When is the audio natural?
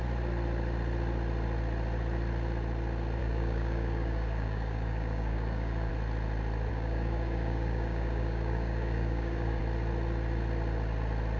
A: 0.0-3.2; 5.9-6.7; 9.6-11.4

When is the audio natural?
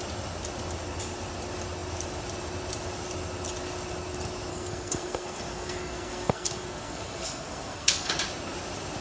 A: 0.0-4.5; 8.1-9.0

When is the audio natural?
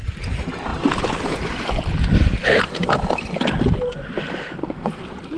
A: 0.0-4.5; 5.0-5.4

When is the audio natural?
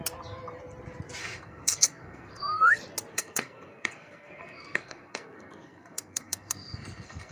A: 0.0-1.2; 2.7-3.1